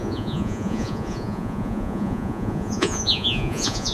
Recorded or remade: remade